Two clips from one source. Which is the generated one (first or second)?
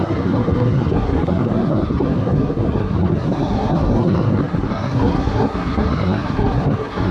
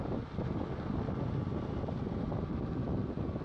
first